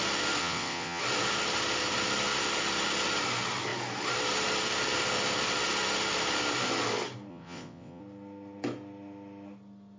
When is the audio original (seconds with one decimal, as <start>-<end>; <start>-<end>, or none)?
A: 0.0-0.4; 1.0-7.3; 8.0-10.0